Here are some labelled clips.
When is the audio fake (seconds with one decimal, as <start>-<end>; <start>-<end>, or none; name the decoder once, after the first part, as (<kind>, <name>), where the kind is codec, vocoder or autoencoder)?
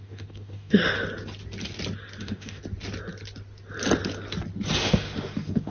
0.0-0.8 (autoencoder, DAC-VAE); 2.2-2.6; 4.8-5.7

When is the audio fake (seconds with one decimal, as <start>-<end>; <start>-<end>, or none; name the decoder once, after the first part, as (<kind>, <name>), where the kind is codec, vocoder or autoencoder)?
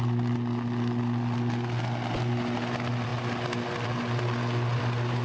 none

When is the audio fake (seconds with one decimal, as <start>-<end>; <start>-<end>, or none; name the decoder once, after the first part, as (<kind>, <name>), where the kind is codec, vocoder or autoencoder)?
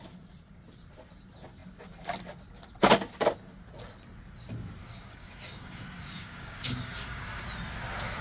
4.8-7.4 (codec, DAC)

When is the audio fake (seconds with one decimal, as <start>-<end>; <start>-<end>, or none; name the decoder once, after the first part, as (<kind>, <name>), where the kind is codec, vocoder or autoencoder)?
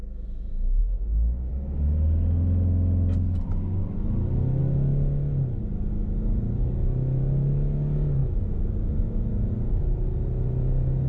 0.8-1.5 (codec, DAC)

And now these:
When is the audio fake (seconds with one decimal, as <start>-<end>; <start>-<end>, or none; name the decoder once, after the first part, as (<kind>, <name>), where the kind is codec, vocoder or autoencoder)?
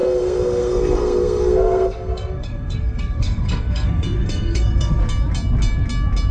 0.0-5.0 (codec, SNAC)